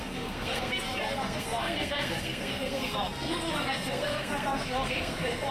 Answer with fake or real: fake